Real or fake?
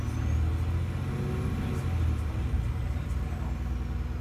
real